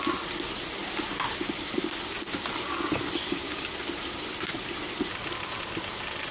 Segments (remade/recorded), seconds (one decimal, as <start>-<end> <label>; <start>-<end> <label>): 0.0-6.3 recorded